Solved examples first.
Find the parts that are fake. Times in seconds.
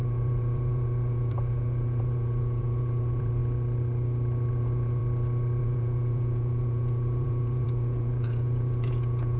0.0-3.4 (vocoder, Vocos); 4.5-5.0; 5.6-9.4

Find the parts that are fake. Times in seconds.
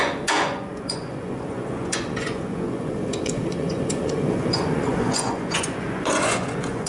0.0-6.9 (vocoder, Vocos)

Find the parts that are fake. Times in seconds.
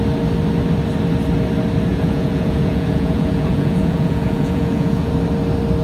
1.9-5.1 (vocoder, Vocos)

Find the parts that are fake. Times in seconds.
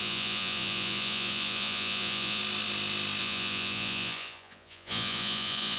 0.0-2.4 (vocoder, Vocos); 3.2-5.8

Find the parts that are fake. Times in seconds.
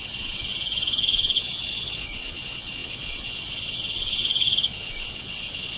0.0-5.8 (vocoder, Vocos)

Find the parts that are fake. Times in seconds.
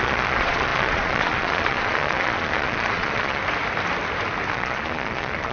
0.0-3.4 (vocoder, Vocos); 4.5-5.5